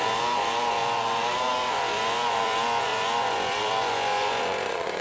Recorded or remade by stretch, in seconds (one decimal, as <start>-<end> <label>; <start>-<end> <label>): 0.0-5.0 remade